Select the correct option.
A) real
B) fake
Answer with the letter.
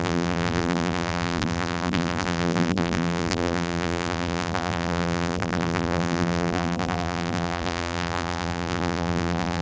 B